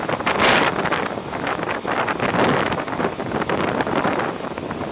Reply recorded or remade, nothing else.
recorded